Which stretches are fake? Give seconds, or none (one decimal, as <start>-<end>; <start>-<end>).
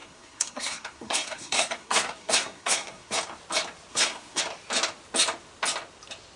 0.0-3.2; 3.9-4.4